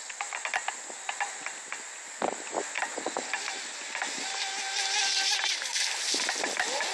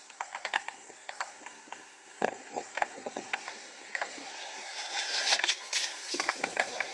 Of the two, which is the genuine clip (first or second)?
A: first